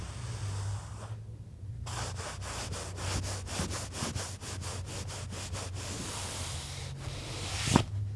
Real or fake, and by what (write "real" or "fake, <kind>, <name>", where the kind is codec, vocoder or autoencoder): real